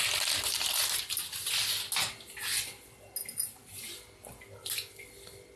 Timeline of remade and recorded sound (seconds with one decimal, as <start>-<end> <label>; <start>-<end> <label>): 0.0-5.6 recorded